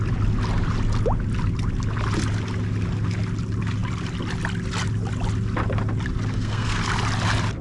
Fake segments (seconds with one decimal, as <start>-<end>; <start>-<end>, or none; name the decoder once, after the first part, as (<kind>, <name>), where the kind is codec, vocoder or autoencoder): 6.3-6.8 (codec, SNAC)